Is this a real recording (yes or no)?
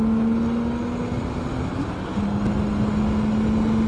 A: yes